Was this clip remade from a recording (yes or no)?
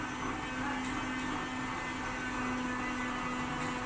no